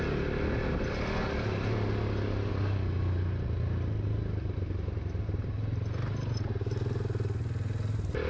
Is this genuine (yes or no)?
yes